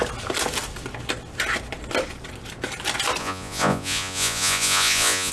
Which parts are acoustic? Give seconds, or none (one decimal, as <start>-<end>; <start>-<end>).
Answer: 0.0-3.2